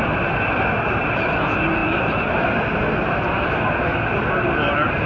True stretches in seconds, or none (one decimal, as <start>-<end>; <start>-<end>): 0.0-1.8; 2.3-5.1